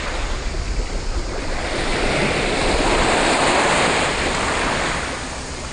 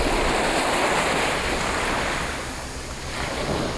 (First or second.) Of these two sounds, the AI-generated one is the first